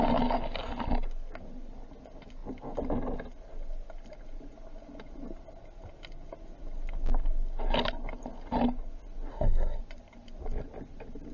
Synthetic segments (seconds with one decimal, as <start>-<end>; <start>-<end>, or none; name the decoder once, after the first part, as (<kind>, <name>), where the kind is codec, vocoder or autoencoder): 9.3-9.8 (codec, SNAC)